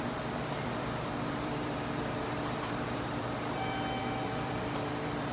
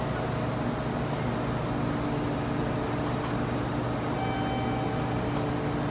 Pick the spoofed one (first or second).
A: first